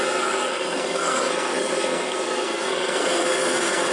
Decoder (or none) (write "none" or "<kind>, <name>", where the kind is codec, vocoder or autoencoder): codec, SNAC